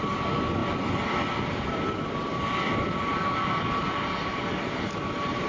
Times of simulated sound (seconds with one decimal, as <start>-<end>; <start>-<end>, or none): none